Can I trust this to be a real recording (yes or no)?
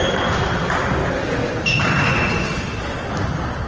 yes